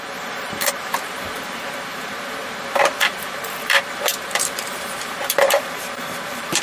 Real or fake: fake